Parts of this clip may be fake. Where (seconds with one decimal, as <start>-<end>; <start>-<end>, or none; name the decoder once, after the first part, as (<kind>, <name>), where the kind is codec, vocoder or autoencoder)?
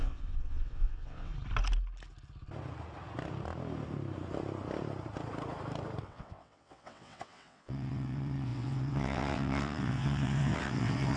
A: 0.0-1.3 (vocoder, WaveNeXt); 6.0-11.2